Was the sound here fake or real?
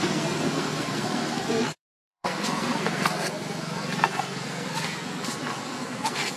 fake